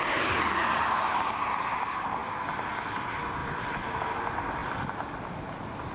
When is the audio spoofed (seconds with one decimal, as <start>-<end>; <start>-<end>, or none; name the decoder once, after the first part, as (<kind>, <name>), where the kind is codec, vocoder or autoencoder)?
3.4-4.0 (vocoder, BigVGAN v2)